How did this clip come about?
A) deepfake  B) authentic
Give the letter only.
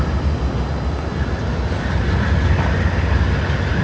B